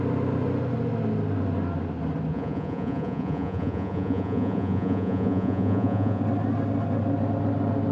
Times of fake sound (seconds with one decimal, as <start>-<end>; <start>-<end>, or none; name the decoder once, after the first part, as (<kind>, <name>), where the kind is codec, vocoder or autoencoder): 2.3-6.2 (vocoder, Vocos)